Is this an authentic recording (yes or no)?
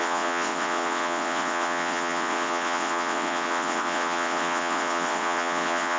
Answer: no